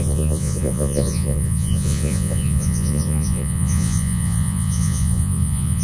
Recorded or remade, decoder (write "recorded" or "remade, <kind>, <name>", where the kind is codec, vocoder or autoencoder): remade, vocoder, Vocos